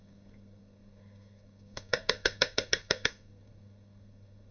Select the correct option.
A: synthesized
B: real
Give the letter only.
A